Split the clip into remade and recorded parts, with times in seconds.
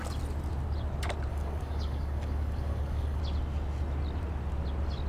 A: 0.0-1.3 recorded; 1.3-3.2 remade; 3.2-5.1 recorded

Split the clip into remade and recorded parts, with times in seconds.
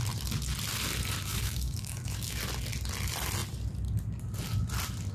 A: 0.0-1.3 recorded; 1.3-2.4 remade; 2.4-5.1 recorded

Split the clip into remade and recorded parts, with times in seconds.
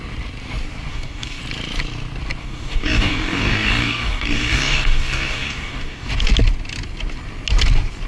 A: 0.0-0.9 recorded; 0.9-1.4 remade; 1.4-2.4 recorded; 2.4-6.1 remade; 6.1-8.1 recorded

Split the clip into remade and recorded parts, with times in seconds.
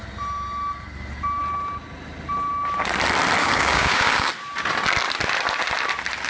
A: 0.0-3.4 recorded; 3.4-4.3 remade; 4.3-6.3 recorded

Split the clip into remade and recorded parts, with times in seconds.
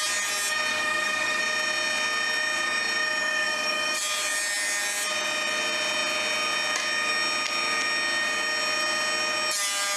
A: 0.0-0.7 recorded; 0.7-1.4 remade; 1.4-3.2 recorded; 3.2-4.0 remade; 4.0-10.0 recorded